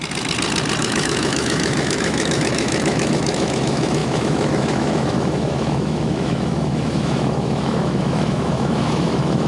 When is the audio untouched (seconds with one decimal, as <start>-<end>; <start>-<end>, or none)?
0.0-0.8